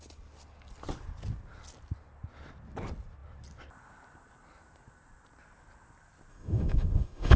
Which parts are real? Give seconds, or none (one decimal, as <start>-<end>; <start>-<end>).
0.0-6.3